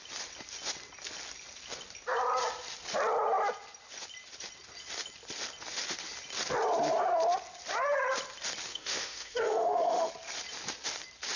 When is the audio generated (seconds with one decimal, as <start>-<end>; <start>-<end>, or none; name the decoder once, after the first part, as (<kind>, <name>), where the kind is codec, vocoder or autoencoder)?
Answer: 8.7-10.1 (autoencoder, DAC-VAE)